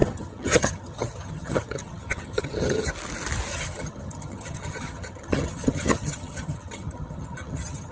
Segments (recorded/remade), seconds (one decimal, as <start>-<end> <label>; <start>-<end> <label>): 0.0-2.9 remade; 2.9-3.5 recorded; 3.5-7.9 remade